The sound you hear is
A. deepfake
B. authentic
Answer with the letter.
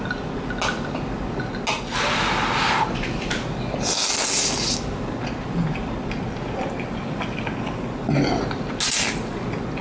B